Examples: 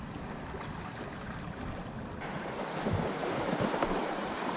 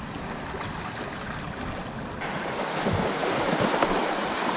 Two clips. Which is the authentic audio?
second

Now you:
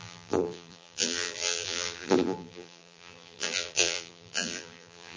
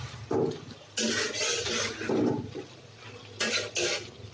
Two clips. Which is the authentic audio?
second